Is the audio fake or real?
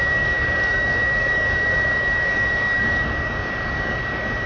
fake